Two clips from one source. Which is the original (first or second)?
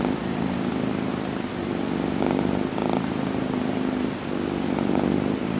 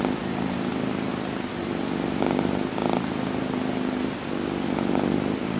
second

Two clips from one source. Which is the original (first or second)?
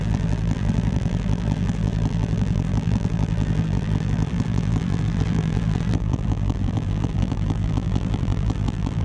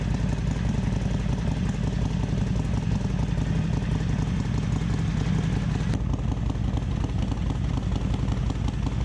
second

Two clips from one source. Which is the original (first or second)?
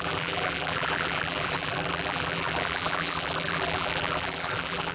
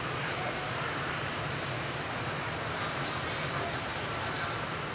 second